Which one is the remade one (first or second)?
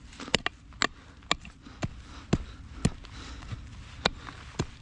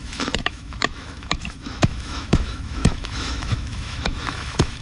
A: second